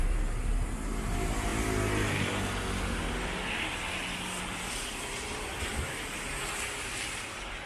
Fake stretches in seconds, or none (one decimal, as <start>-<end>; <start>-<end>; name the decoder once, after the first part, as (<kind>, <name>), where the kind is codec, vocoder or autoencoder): 5.7-6.2 (vocoder, BigVGAN v2)